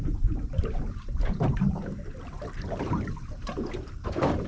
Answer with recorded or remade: remade